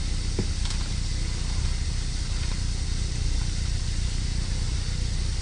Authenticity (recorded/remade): recorded